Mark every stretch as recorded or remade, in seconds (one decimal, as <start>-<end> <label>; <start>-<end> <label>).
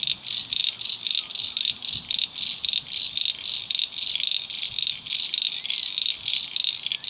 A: 0.0-7.1 recorded